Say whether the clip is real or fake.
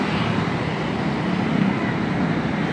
real